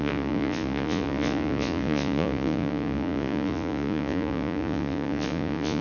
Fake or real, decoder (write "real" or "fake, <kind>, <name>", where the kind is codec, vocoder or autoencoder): fake, vocoder, Vocos